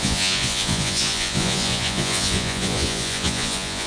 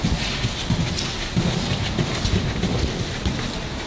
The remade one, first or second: first